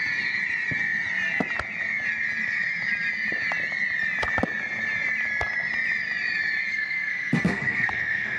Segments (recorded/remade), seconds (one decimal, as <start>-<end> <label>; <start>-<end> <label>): 0.0-6.7 recorded; 6.7-8.4 remade